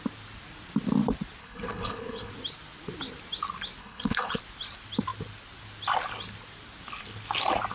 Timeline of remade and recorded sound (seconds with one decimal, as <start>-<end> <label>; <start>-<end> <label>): 0.0-1.4 recorded; 1.4-2.3 remade; 2.3-3.8 recorded; 3.8-4.4 remade; 4.4-7.7 recorded